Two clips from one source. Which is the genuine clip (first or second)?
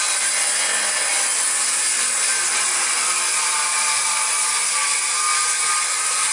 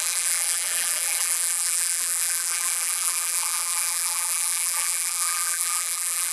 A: first